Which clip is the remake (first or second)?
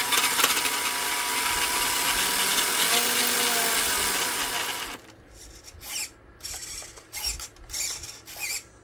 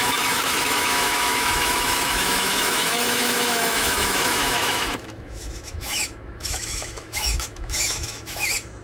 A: second